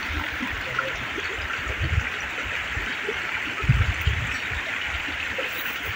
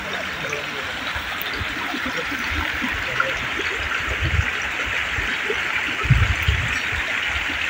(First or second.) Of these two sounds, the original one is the second